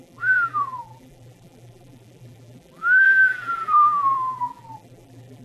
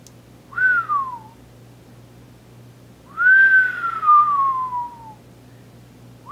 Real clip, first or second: second